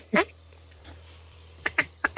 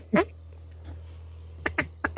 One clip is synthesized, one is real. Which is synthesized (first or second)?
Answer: first